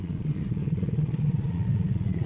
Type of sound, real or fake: fake